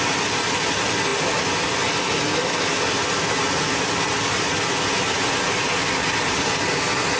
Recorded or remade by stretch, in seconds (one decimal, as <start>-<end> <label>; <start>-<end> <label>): 0.0-7.2 recorded